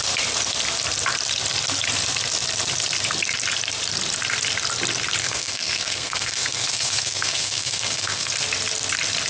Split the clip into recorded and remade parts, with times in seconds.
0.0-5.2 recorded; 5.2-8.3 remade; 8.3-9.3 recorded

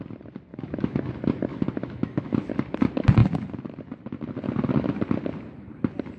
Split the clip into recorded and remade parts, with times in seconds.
0.0-0.5 recorded; 0.5-1.1 remade; 1.1-1.5 recorded; 1.5-2.5 remade; 2.5-6.2 recorded

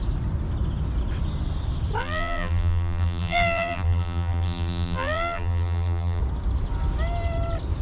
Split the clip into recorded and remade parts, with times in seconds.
0.0-2.0 recorded; 2.0-6.2 remade; 6.2-7.8 recorded

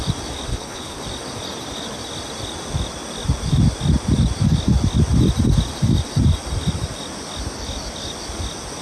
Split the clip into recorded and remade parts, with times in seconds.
0.0-0.5 recorded; 0.5-1.0 remade; 1.0-8.8 recorded

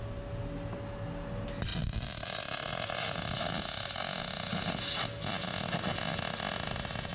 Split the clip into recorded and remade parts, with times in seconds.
0.0-7.1 recorded

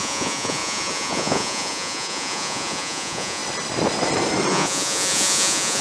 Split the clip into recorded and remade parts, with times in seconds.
0.0-3.4 remade; 3.4-4.5 recorded; 4.5-5.8 remade

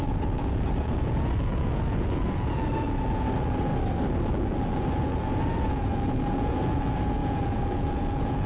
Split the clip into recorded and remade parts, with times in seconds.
0.0-3.7 remade; 3.7-4.3 recorded; 4.3-8.5 remade

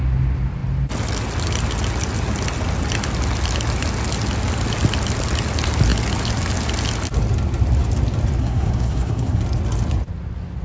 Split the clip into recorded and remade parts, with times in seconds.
0.0-8.4 recorded; 8.4-9.4 remade; 9.4-10.6 recorded